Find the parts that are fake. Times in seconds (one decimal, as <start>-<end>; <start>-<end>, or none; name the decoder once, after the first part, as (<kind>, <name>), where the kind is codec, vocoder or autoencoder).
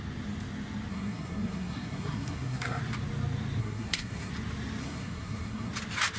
0.9-2.8 (codec, SNAC); 3.6-4.3; 4.8-5.7